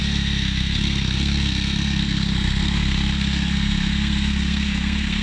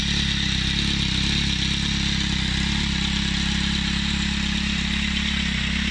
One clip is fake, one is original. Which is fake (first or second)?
first